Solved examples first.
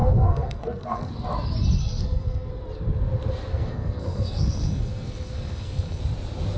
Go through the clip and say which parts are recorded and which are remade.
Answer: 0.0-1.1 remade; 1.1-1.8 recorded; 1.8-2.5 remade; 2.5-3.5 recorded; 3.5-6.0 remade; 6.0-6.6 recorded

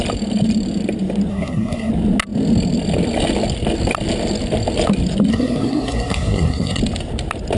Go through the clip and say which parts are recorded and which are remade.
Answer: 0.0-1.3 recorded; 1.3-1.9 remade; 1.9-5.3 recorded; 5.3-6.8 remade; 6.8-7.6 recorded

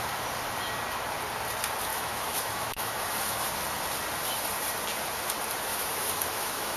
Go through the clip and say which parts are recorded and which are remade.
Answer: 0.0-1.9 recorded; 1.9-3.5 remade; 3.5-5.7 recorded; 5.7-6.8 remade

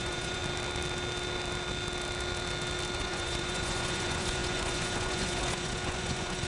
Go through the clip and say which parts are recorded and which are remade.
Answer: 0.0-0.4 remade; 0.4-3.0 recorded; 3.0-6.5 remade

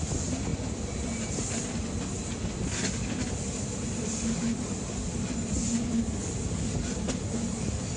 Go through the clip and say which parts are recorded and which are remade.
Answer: 0.0-8.0 recorded

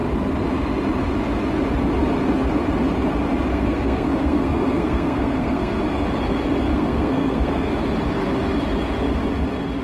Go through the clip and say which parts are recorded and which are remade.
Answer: 0.0-3.5 recorded; 3.5-5.8 remade; 5.8-6.7 recorded; 6.7-7.7 remade; 7.7-9.8 recorded